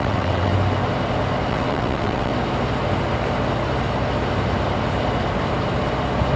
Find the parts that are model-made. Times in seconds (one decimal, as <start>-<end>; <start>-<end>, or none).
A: 0.0-0.5; 1.5-2.3